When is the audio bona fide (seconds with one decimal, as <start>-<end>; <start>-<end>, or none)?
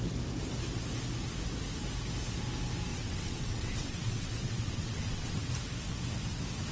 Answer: 0.0-2.9; 5.5-6.7